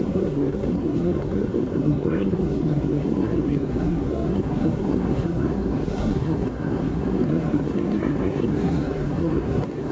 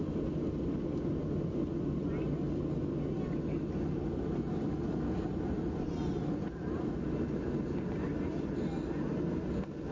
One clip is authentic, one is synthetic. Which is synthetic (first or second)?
first